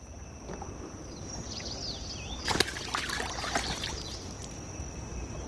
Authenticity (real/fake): real